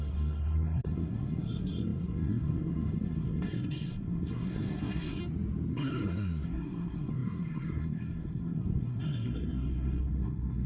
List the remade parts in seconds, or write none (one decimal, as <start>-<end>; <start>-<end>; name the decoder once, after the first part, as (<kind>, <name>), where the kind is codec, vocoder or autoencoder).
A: 0.0-5.2 (codec, SNAC); 5.7-10.7

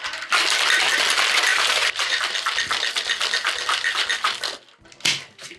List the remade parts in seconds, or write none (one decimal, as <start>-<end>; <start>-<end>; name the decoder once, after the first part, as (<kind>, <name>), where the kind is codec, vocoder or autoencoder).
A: 1.5-2.2 (vocoder, BigVGAN v2)

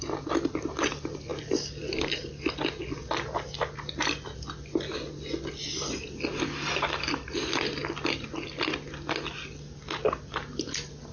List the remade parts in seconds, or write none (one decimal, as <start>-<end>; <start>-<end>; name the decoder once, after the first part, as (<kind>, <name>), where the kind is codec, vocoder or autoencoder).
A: none

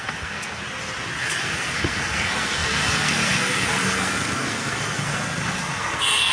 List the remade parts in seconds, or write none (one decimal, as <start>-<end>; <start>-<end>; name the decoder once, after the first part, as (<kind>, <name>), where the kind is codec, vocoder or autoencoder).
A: 0.0-0.6 (codec, SNAC); 1.2-6.3

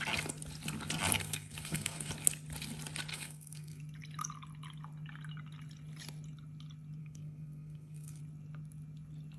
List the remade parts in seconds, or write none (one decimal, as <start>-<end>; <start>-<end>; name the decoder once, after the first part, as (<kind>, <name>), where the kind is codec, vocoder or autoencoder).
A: 1.2-2.1 (codec, SNAC); 3.1-3.8; 7.0-8.2